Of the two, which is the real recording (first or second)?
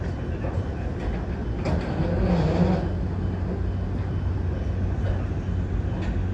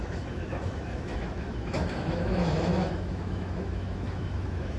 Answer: first